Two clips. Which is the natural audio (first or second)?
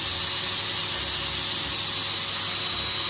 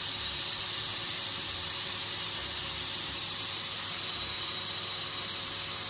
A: first